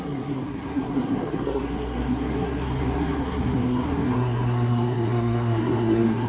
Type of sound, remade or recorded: remade